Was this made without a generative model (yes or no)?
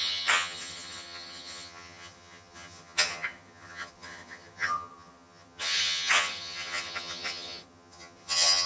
no